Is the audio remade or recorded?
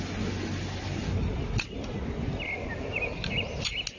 recorded